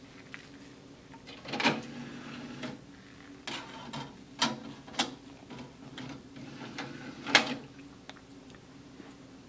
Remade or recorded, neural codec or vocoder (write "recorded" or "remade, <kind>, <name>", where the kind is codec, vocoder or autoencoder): recorded